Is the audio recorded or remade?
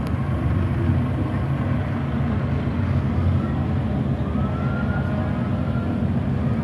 recorded